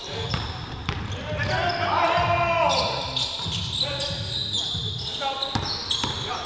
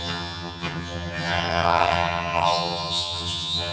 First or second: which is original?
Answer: first